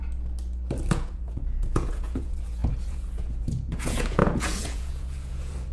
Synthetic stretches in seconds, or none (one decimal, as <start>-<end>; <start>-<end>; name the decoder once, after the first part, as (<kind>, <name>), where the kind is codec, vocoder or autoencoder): 0.9-5.7 (vocoder, Vocos)